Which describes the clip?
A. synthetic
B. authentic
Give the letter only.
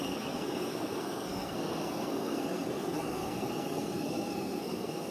A